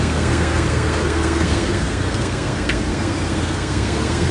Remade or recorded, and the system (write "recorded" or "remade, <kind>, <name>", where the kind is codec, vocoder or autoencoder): remade, codec, SNAC